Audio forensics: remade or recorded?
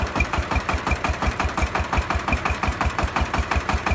remade